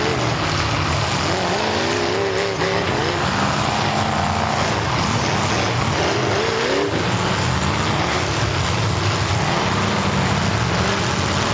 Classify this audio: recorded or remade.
recorded